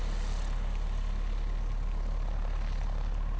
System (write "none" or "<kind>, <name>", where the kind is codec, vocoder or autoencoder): none